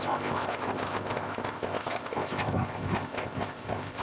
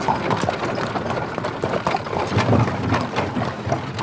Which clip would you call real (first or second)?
second